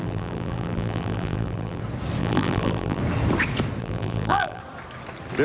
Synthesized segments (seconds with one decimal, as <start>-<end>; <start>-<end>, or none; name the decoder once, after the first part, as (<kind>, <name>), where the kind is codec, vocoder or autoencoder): 0.0-1.8 (vocoder, BigVGAN v2); 2.2-3.0; 3.8-4.6